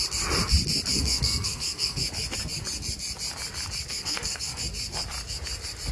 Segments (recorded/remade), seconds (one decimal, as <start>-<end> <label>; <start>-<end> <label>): 0.0-0.9 recorded; 0.9-2.0 remade; 2.0-3.9 recorded; 3.9-4.6 remade; 4.6-5.9 recorded